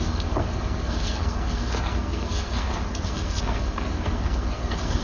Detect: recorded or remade remade